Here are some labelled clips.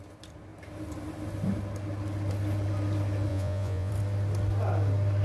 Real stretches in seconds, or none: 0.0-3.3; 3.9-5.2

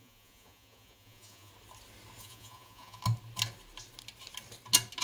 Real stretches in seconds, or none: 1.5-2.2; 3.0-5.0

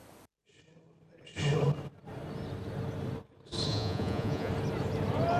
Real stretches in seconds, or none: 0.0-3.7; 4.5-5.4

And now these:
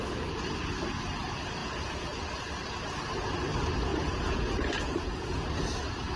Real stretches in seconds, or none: 0.0-1.6; 2.3-3.9; 5.5-6.2